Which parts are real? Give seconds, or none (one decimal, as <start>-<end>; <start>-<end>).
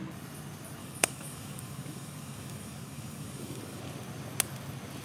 0.0-0.8; 3.8-5.0